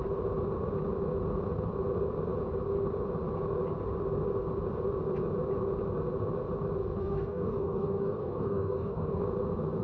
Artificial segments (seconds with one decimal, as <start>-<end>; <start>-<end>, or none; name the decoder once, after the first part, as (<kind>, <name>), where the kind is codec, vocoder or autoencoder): 7.0-9.2 (codec, DAC)